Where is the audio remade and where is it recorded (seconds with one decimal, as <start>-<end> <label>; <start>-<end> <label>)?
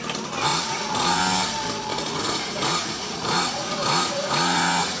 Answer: 0.0-0.5 recorded; 0.5-1.2 remade; 1.2-1.9 recorded; 1.9-5.0 remade